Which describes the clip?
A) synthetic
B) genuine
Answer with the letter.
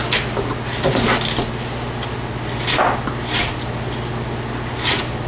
B